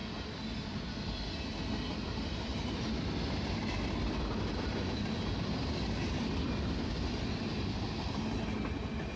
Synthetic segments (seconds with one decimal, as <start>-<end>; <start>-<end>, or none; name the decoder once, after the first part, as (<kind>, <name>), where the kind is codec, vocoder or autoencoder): none